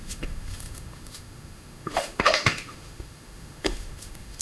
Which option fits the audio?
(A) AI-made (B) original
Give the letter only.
A